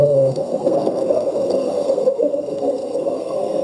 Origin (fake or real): fake